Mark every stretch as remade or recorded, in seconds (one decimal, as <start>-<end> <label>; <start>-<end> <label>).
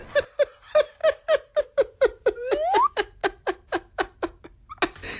0.0-5.2 recorded